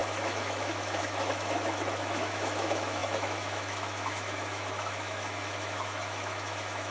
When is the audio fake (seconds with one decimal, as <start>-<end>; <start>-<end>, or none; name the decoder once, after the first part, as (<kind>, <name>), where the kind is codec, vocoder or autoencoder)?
0.0-6.9 (autoencoder, DAC-VAE)